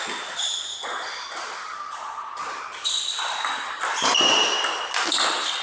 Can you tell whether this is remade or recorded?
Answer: recorded